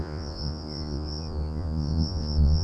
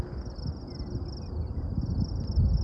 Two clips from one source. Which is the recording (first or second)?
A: second